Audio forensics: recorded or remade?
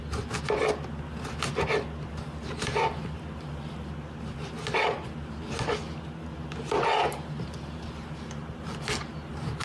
recorded